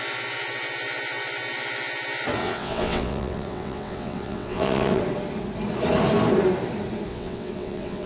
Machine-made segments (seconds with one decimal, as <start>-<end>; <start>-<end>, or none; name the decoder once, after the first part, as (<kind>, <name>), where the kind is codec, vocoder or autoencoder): 2.4-5.0 (vocoder, WaveNeXt); 7.1-8.1